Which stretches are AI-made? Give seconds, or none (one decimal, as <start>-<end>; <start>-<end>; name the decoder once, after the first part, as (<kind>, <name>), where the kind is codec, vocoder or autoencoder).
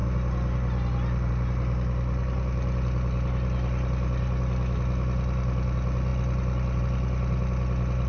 none